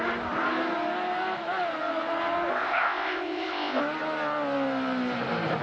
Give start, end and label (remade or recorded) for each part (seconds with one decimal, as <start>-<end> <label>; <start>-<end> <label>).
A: 0.0-2.5 recorded; 2.5-3.8 remade; 3.8-5.6 recorded